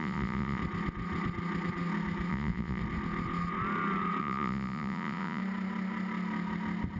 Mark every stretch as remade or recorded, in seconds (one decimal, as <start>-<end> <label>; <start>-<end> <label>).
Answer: 0.0-0.6 remade; 0.6-2.3 recorded; 2.3-2.8 remade; 2.8-4.2 recorded; 4.2-5.4 remade; 5.4-7.0 recorded